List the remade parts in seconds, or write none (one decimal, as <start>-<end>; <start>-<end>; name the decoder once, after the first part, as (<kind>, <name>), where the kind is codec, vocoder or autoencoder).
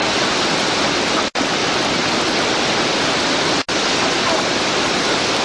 none